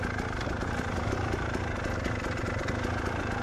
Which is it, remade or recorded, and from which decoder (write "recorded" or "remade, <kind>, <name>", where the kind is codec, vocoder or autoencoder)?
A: recorded